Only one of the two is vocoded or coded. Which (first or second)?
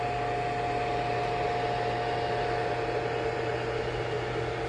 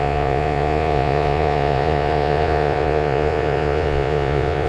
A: second